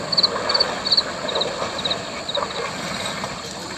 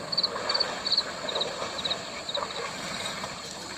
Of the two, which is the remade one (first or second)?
second